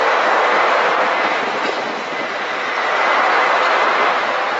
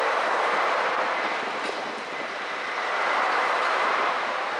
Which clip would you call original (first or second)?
first